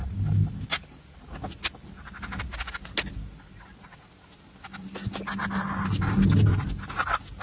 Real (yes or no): yes